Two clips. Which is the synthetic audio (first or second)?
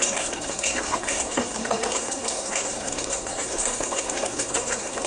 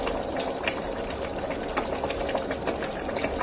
first